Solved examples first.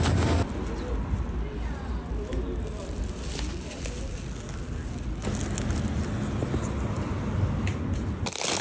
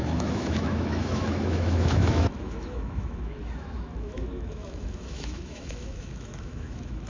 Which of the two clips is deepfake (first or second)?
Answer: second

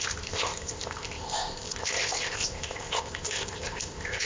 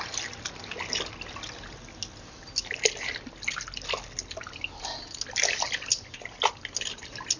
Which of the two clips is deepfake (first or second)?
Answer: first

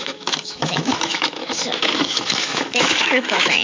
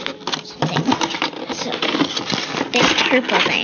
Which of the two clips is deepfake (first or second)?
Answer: first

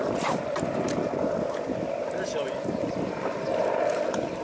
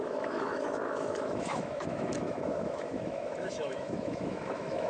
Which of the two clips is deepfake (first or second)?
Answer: second